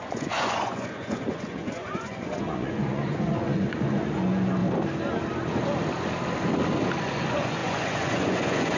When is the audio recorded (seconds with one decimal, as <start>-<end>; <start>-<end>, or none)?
4.6-7.0